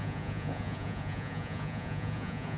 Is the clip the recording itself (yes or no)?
no